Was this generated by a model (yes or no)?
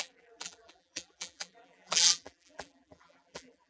yes